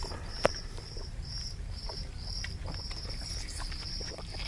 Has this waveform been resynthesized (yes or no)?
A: yes